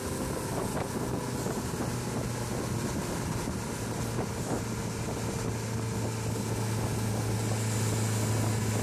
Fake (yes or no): no